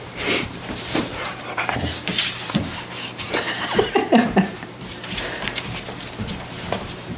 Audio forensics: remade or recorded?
remade